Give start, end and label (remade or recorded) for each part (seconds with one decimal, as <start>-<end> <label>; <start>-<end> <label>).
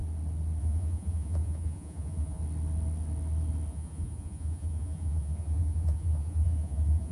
0.0-0.6 recorded; 0.6-2.4 remade; 2.4-3.7 recorded; 3.7-7.1 remade